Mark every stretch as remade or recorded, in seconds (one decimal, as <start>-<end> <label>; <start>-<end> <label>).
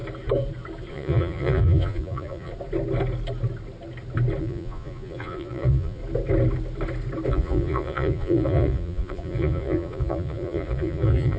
0.0-0.9 recorded; 0.9-2.5 remade; 2.5-4.4 recorded; 4.4-6.0 remade; 6.0-7.3 recorded; 7.3-11.4 remade